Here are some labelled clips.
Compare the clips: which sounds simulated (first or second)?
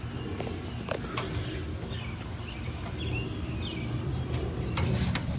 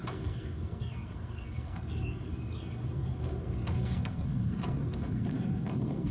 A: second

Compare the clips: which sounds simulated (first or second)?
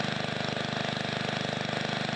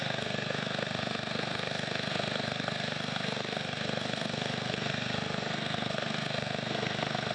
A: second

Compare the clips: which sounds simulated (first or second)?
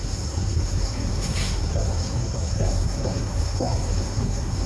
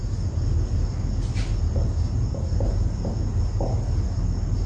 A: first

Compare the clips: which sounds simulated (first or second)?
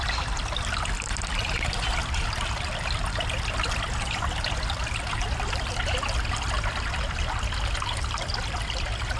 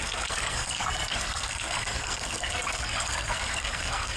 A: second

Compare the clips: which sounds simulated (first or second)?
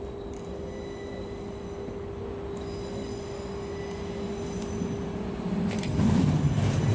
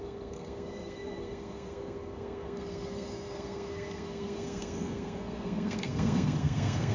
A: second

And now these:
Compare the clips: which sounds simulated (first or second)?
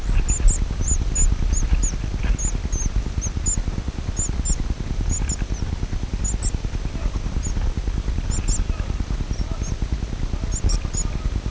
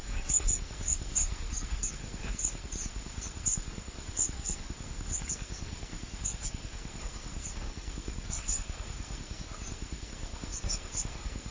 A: second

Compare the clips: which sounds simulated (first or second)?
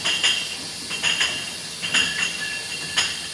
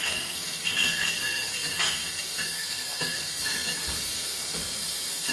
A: second